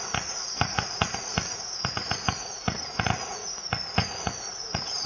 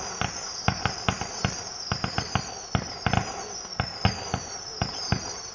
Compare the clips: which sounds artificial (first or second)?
first